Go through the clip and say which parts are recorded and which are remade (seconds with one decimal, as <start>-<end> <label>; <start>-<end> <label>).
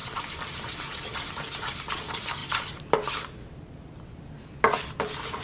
0.0-2.4 recorded; 2.4-3.7 remade; 3.7-5.4 recorded